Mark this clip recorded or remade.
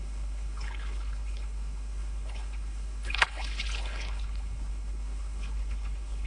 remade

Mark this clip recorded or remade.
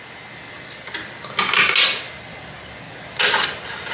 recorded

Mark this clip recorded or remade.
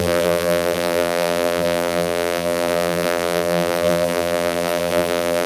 remade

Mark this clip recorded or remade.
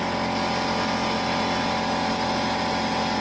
recorded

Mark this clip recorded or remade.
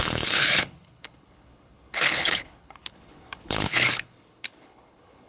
remade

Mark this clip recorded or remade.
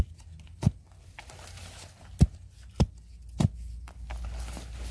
recorded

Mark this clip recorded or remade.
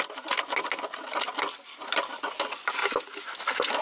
recorded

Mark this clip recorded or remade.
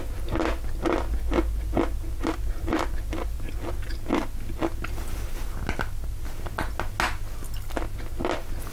recorded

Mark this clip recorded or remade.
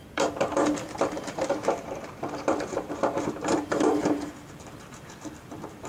remade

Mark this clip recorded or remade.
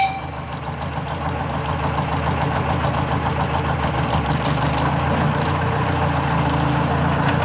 recorded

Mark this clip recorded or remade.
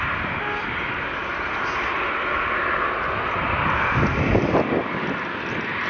recorded